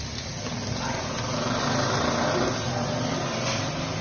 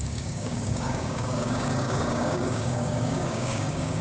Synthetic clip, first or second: second